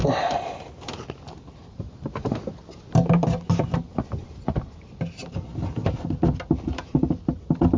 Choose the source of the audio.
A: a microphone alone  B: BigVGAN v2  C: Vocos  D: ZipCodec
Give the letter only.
A